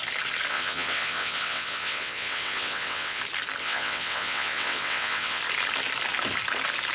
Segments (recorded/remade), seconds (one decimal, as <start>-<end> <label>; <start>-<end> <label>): 0.0-0.5 recorded; 0.5-3.2 remade; 3.2-3.6 recorded; 3.6-5.4 remade; 5.4-6.9 recorded

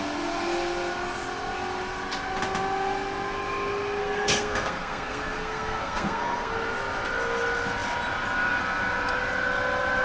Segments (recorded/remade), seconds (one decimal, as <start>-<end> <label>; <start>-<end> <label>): 0.0-4.0 recorded; 4.0-6.5 remade; 6.5-10.0 recorded

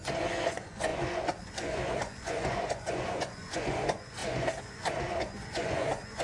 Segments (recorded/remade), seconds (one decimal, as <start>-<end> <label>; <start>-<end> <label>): 0.0-6.2 remade

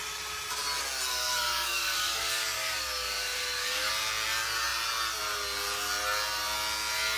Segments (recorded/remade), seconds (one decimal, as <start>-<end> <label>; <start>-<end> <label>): 0.0-1.1 recorded; 1.1-3.9 remade; 3.9-7.2 recorded

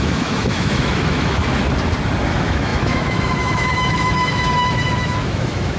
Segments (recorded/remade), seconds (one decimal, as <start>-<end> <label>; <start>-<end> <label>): 0.0-1.4 remade; 1.4-2.3 recorded; 2.3-5.8 remade

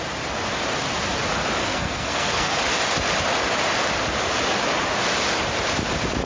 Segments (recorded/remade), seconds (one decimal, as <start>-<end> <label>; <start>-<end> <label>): 0.0-1.6 recorded; 1.6-2.6 remade; 2.6-6.3 recorded